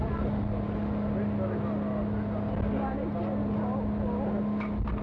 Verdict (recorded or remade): recorded